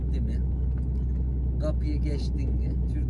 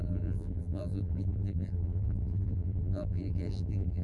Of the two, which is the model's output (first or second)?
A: second